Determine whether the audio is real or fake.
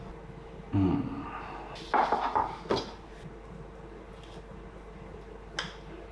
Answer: real